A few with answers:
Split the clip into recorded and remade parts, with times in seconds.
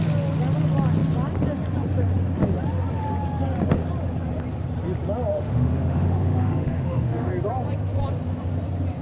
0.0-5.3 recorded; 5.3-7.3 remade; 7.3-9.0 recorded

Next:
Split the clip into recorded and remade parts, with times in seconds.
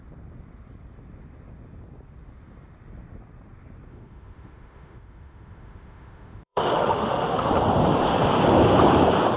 0.0-3.9 recorded; 3.9-7.5 remade; 7.5-9.4 recorded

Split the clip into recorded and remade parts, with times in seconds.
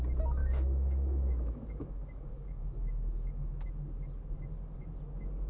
0.0-0.4 recorded; 0.4-3.7 remade; 3.7-5.5 recorded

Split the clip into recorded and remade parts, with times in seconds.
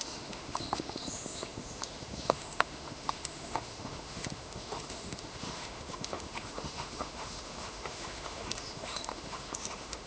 0.0-10.1 remade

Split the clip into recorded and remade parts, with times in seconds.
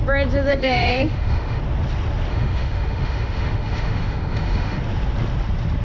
0.0-0.5 recorded; 0.5-1.6 remade; 1.6-2.3 recorded; 2.3-4.8 remade; 4.8-5.8 recorded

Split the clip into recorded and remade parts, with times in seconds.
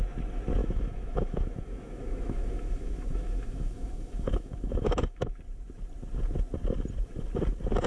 0.0-0.6 recorded; 0.6-5.3 remade; 5.3-7.9 recorded